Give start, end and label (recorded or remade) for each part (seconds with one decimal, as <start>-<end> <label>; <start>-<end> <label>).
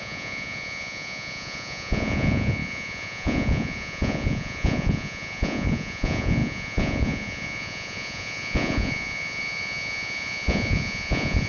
0.0-11.5 remade